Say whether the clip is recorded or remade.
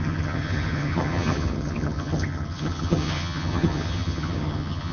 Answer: remade